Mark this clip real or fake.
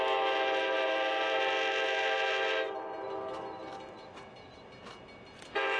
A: real